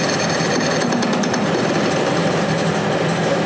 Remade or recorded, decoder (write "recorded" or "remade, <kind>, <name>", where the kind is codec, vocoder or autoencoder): recorded